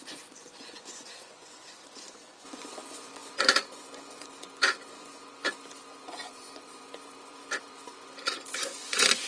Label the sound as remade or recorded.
remade